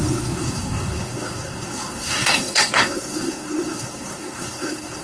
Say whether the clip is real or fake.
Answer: fake